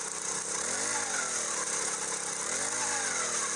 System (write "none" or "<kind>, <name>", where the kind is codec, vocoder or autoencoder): none